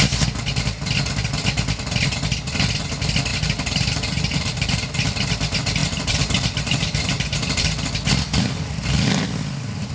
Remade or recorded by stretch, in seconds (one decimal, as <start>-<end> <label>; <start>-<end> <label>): 0.0-3.3 recorded; 3.3-5.0 remade; 5.0-5.8 recorded; 5.8-7.7 remade; 7.7-9.9 recorded